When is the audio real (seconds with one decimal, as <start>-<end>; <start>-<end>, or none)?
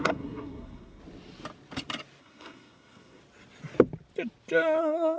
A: 1.0-2.2; 3.2-4.8